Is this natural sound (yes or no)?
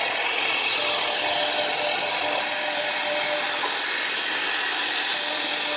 yes